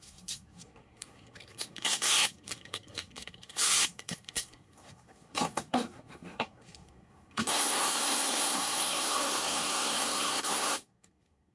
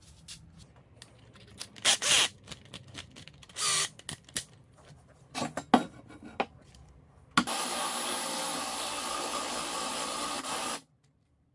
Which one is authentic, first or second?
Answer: second